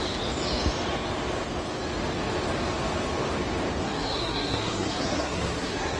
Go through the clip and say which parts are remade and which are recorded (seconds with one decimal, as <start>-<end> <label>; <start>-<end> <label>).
0.0-3.8 recorded; 3.8-6.0 remade